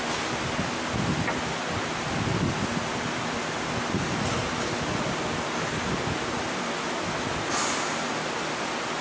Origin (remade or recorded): recorded